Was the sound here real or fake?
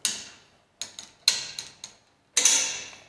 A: real